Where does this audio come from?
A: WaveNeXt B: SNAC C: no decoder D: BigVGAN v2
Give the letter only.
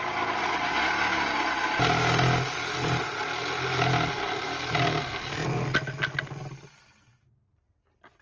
C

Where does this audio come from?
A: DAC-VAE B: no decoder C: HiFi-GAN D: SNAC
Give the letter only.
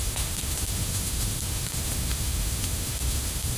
A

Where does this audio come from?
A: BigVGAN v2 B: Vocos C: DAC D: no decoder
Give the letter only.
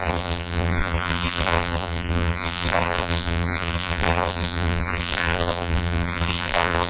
A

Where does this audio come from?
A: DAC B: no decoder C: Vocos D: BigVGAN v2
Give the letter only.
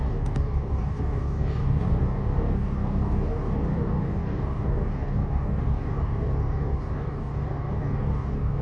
A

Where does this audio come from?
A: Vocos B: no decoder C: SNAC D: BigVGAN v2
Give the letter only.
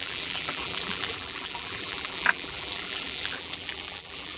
D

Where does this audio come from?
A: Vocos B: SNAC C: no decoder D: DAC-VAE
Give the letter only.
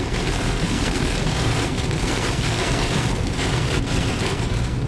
B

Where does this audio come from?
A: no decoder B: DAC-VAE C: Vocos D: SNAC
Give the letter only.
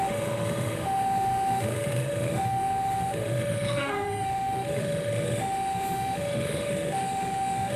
B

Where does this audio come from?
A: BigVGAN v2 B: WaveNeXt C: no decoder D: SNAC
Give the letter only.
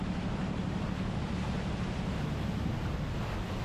C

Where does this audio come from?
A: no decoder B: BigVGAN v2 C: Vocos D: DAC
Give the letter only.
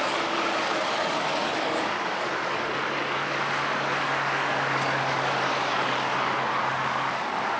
D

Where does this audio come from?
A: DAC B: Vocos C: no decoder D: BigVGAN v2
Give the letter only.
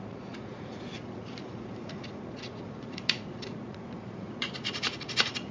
B